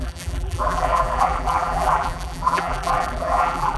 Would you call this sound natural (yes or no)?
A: no